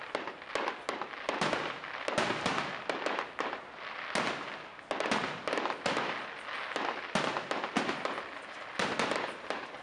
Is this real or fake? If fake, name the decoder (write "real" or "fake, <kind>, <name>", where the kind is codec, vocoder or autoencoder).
real